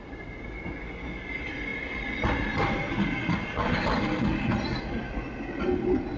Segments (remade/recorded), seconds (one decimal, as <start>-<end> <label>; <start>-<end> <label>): 0.0-6.2 recorded